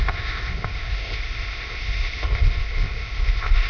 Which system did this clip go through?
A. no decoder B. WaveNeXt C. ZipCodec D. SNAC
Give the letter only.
C